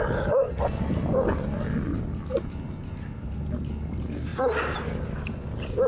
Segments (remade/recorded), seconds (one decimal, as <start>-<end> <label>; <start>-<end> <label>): 0.0-5.9 recorded